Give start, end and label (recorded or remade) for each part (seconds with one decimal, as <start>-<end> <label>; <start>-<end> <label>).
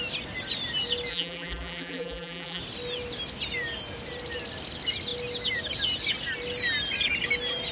0.0-1.1 recorded; 1.1-2.6 remade; 2.6-7.7 recorded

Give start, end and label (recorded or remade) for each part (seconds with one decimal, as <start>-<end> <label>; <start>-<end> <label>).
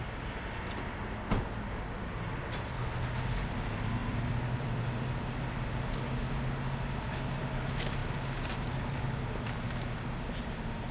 0.0-4.0 recorded; 4.0-5.0 remade; 5.0-10.9 recorded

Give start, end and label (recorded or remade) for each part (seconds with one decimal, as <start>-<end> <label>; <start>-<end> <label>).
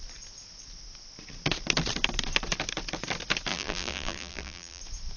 0.0-3.5 recorded; 3.5-4.8 remade; 4.8-5.2 recorded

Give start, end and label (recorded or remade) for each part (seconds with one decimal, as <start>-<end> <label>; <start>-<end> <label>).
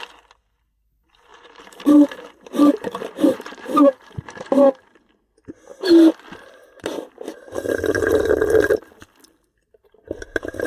0.0-1.3 recorded; 1.3-4.5 remade; 4.5-10.7 recorded